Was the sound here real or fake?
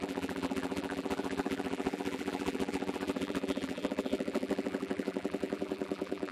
fake